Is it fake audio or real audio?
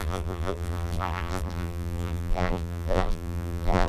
fake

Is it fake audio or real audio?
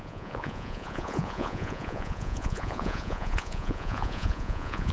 fake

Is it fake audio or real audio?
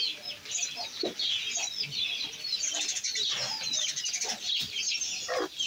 real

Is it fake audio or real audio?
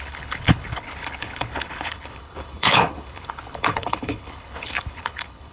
fake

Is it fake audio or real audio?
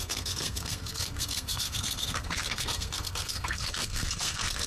fake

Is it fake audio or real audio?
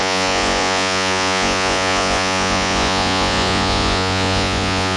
fake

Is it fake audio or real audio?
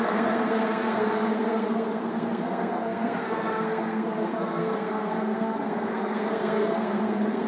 fake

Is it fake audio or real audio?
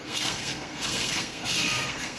fake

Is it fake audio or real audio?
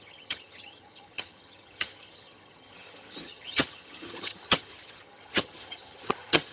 fake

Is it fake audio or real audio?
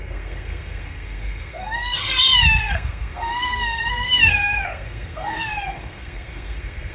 fake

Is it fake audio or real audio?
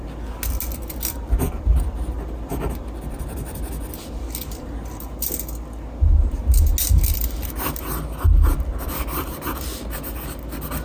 real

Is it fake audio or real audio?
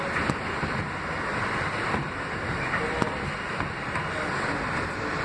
real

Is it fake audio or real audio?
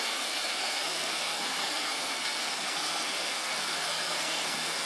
fake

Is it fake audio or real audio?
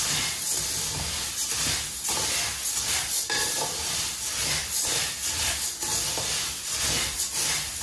real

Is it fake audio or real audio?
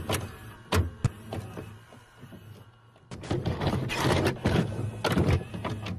real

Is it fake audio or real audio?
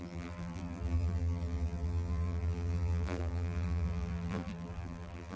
fake